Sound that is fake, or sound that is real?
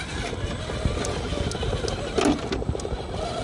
real